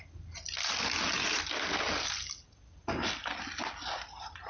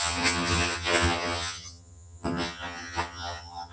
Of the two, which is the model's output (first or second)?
second